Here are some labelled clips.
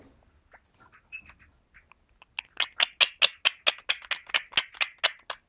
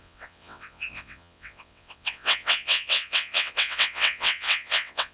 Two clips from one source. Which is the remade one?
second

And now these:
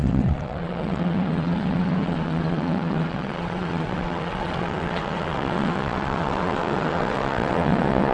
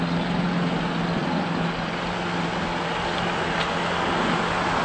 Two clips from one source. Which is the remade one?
first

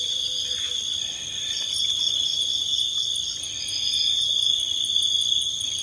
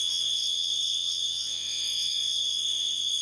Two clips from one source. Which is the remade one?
second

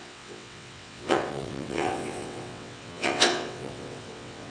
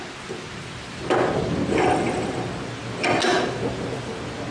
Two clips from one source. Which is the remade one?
first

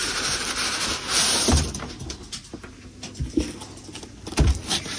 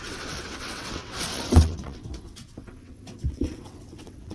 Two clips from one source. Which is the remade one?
second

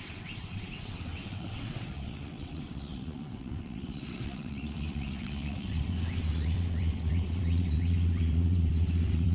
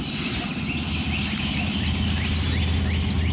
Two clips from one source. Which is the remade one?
first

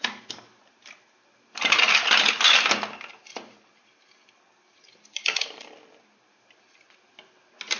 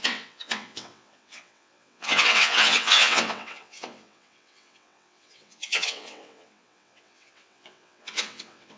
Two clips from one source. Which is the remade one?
second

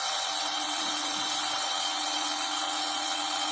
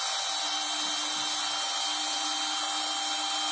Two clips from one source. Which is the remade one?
first